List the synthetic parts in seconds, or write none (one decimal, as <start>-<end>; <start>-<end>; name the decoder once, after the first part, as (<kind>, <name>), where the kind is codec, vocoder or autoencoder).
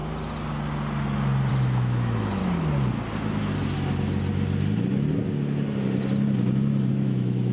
1.5-2.4 (autoencoder, DAC-VAE); 6.9-7.5